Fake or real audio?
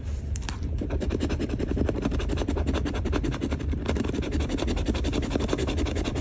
fake